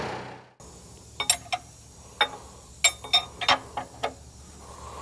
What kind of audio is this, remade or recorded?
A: recorded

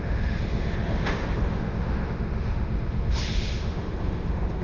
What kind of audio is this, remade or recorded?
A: remade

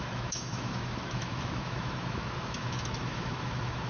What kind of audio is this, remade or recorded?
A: remade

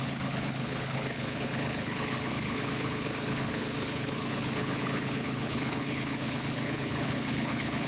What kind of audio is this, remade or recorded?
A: remade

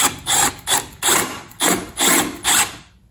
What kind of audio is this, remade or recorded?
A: recorded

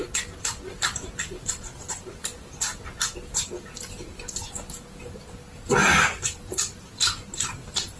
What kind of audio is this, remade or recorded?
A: recorded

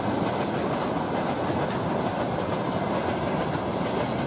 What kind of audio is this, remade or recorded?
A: recorded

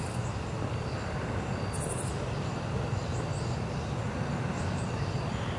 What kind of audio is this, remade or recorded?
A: recorded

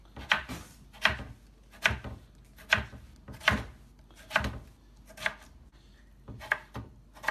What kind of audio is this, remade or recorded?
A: recorded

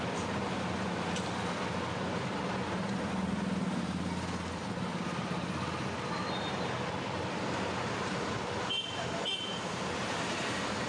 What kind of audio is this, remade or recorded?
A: recorded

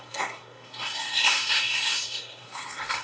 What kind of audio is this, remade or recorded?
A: remade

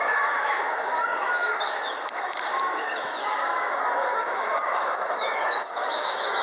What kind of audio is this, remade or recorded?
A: remade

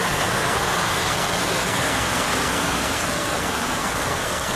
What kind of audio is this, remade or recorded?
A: remade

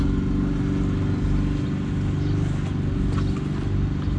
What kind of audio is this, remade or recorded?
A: recorded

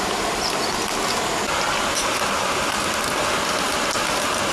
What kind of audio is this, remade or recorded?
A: recorded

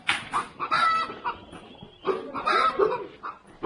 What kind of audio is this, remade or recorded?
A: recorded